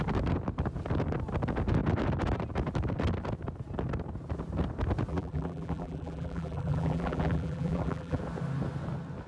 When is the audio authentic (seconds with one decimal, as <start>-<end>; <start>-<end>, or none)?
0.0-5.1; 8.2-9.3